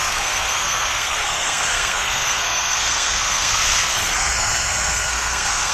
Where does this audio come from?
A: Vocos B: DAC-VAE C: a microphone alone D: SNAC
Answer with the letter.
D